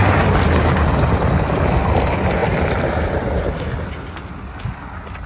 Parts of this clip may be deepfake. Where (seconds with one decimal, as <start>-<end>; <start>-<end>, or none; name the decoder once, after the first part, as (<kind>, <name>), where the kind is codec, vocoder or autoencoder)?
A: none